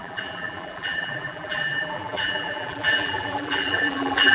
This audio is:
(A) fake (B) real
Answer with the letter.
A